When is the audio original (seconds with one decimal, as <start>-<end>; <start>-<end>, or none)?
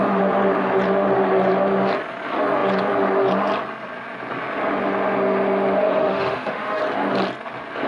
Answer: 0.0-6.0; 6.8-7.9